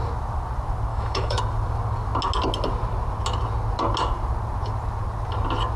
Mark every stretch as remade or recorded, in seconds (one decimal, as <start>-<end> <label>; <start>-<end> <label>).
0.0-0.9 recorded; 0.9-1.4 remade; 1.4-5.8 recorded

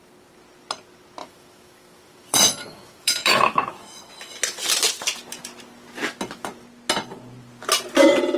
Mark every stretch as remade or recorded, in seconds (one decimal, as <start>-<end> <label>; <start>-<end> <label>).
0.0-1.2 recorded; 1.2-4.1 remade; 4.1-8.4 recorded

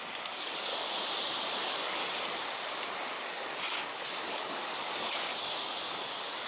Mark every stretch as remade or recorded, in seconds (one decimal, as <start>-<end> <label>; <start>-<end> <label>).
0.0-0.7 remade; 0.7-1.6 recorded; 1.6-2.0 remade; 2.0-3.2 recorded; 3.2-6.5 remade

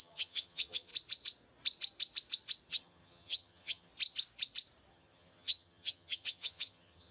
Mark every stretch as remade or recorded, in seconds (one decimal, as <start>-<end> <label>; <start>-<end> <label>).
0.0-0.9 remade; 0.9-2.7 recorded; 2.7-3.9 remade; 3.9-4.9 recorded; 4.9-7.1 remade